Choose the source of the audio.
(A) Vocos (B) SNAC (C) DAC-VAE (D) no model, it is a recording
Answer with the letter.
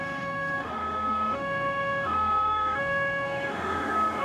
C